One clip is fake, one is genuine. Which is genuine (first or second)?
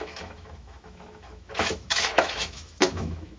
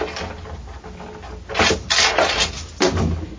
second